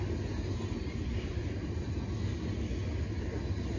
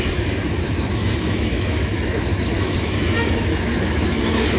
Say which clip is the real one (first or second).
first